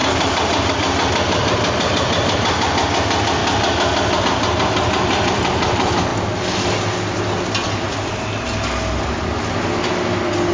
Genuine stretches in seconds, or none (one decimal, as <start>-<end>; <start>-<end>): 0.0-10.5